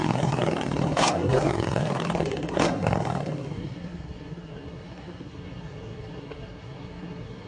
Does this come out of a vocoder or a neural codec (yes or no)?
yes